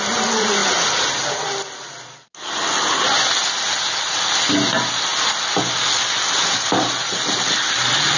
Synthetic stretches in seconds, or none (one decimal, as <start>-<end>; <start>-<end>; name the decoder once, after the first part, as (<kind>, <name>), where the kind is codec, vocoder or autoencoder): none